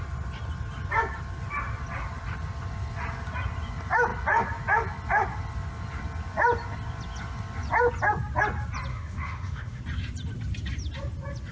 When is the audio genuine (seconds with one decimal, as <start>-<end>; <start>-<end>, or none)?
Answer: 0.0-8.9; 9.8-11.5